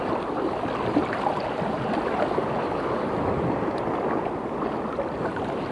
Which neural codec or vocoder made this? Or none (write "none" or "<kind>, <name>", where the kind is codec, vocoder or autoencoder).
none